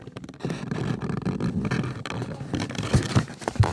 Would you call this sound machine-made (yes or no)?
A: no